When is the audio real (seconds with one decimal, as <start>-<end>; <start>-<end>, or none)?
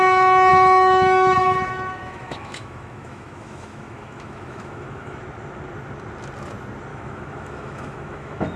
0.0-0.5; 5.2-6.9